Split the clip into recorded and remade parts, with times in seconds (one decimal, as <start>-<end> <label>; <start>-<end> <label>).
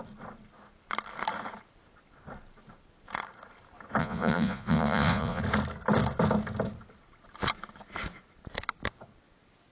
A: 0.0-4.0 recorded; 4.0-5.4 remade; 5.4-9.7 recorded